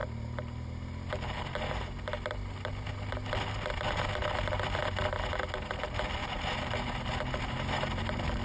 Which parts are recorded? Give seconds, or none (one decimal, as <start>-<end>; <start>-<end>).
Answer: 2.9-6.2